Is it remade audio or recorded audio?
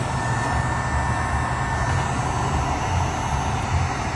recorded